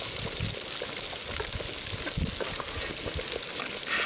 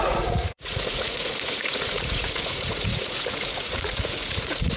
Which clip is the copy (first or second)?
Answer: second